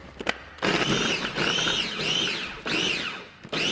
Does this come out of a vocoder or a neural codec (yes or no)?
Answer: no